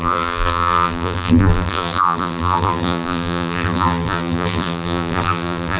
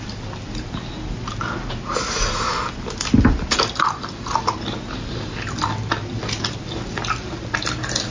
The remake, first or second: first